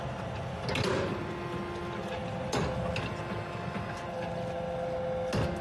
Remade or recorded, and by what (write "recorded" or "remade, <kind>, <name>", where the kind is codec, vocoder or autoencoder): recorded